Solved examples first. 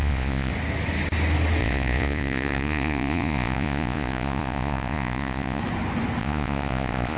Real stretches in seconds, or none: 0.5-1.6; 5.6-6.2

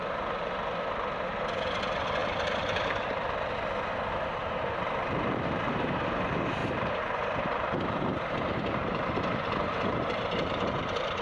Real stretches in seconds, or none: 0.0-2.2; 2.9-4.4; 5.9-6.6